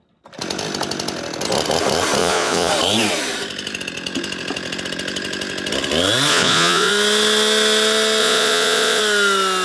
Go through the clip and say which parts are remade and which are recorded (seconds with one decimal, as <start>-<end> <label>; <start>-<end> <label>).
0.0-2.2 recorded; 2.2-2.7 remade; 2.7-6.3 recorded; 6.3-6.9 remade; 6.9-8.2 recorded; 8.2-9.0 remade; 9.0-9.6 recorded